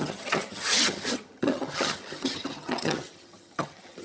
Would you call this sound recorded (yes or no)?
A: no